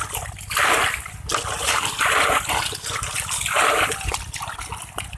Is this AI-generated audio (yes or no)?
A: no